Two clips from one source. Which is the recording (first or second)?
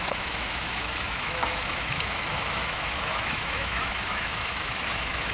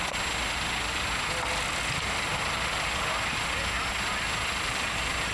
second